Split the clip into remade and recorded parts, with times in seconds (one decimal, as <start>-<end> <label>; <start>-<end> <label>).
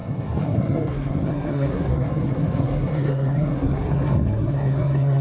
0.0-5.2 remade